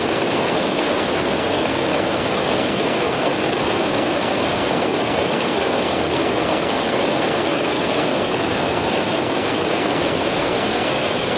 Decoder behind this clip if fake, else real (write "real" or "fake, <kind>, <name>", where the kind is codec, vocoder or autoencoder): fake, codec, SNAC